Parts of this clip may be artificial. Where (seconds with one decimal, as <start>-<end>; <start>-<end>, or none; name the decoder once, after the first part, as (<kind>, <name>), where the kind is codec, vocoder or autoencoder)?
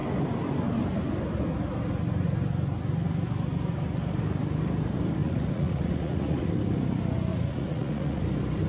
5.2-6.5 (vocoder, Vocos); 7.3-8.2